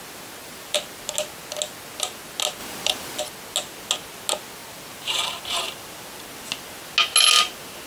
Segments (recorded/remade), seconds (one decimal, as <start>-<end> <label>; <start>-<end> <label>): 0.0-0.4 recorded; 0.4-1.0 remade; 1.0-2.6 recorded; 2.6-3.2 remade; 3.2-4.6 recorded; 4.6-5.9 remade; 5.9-7.9 recorded